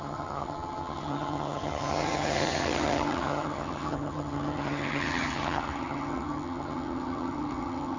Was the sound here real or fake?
fake